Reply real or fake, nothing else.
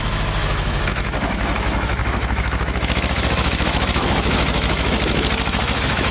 fake